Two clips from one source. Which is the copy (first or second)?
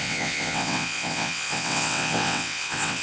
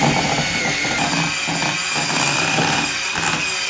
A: first